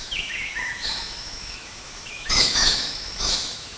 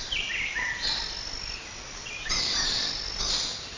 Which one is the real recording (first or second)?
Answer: second